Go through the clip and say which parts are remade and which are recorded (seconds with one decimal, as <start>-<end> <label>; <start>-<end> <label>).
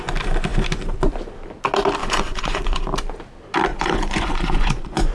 0.0-2.0 recorded; 2.0-2.8 remade; 2.8-3.7 recorded; 3.7-5.1 remade